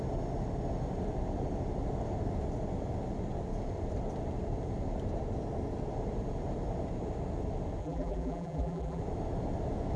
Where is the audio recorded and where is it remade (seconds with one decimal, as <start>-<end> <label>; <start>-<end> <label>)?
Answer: 0.0-7.8 recorded; 7.8-9.0 remade; 9.0-10.0 recorded